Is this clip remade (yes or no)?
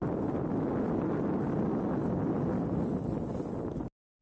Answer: no